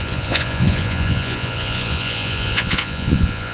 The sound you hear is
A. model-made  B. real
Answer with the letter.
A